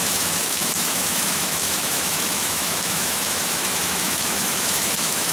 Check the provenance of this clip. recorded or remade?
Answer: remade